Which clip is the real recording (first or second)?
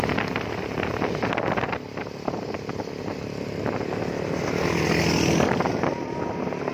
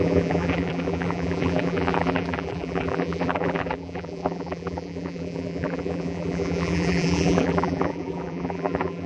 first